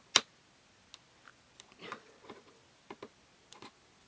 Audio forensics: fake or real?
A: real